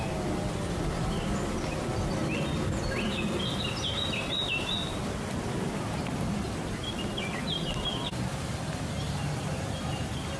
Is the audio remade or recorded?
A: recorded